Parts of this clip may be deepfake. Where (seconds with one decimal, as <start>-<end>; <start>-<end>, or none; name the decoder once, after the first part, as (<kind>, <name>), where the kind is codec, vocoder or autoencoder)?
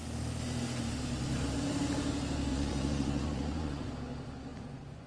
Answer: 2.5-3.9 (vocoder, Vocos); 4.5-5.1